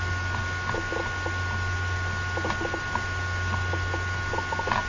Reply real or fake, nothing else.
real